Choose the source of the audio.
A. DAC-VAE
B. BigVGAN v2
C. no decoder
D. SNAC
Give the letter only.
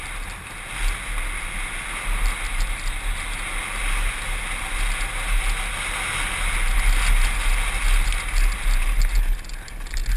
C